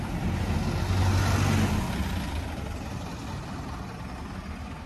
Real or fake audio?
real